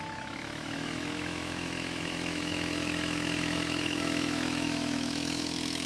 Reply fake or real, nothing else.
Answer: fake